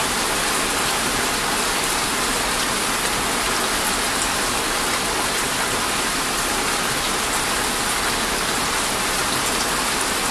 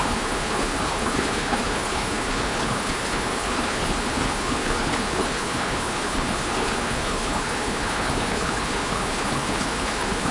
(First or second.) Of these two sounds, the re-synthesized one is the second